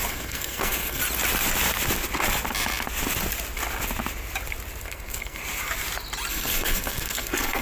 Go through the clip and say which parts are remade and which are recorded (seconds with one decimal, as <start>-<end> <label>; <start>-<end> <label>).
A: 0.0-1.0 remade; 1.0-4.8 recorded; 4.8-5.4 remade; 5.4-6.3 recorded; 6.3-7.6 remade

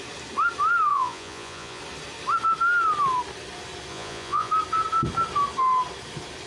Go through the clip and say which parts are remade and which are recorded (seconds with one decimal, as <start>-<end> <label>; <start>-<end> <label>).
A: 0.0-0.9 recorded; 0.9-1.8 remade; 1.8-3.9 recorded; 3.9-4.5 remade; 4.5-6.5 recorded

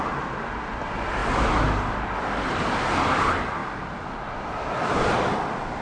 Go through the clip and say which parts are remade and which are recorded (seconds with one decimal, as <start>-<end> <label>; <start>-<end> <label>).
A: 0.0-5.8 recorded

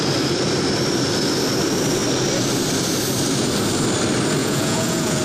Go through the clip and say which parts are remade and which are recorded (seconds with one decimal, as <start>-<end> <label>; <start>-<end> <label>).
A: 0.0-4.4 recorded; 4.4-5.2 remade